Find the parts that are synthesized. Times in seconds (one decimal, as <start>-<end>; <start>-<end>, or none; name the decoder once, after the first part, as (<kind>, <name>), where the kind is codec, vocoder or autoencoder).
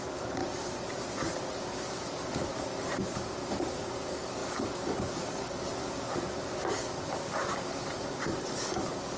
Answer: 0.0-0.4 (codec, DAC); 1.5-2.5; 3.1-9.2